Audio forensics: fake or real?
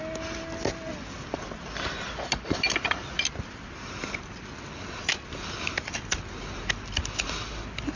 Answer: real